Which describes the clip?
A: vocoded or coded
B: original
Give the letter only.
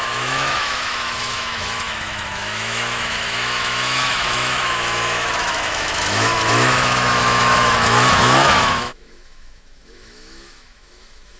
A